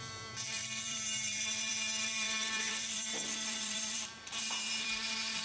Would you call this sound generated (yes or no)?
yes